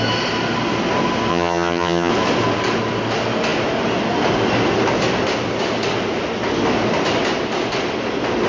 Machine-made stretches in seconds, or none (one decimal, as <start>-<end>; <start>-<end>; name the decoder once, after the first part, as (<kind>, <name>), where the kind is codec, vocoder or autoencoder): 1.3-2.1 (vocoder, HiFi-GAN)